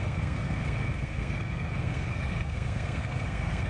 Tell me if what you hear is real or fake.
fake